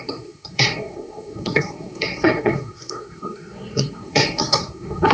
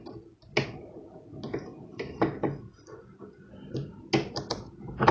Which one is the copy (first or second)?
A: first